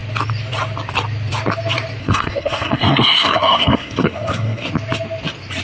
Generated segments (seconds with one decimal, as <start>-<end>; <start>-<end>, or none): 2.0-4.7